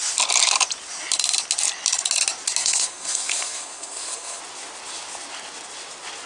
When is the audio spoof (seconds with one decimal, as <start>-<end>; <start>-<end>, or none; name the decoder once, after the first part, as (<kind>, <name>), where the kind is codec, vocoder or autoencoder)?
2.6-4.4 (codec, SNAC)